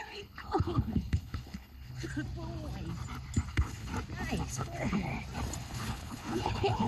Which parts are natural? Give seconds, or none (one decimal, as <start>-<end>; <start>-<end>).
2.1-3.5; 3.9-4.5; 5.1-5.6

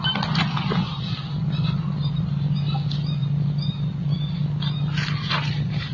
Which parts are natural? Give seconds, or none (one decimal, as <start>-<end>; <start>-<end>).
0.0-5.9

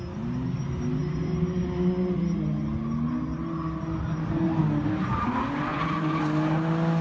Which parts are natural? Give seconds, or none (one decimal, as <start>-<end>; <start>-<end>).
0.0-5.7; 6.2-7.0

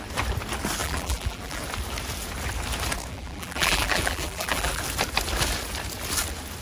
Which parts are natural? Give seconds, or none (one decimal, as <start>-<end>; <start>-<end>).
0.0-0.8; 1.6-3.1; 4.8-6.6

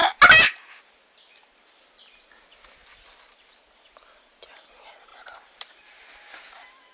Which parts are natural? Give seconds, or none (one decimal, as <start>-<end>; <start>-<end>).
0.0-5.1; 5.7-6.9

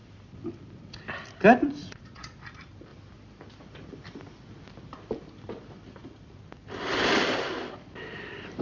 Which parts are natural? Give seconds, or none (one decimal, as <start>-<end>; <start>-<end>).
0.0-1.8; 2.4-8.6

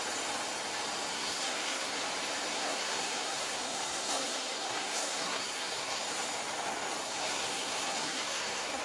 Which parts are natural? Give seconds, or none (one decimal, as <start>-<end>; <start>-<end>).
0.0-1.1; 2.0-2.5; 6.0-7.0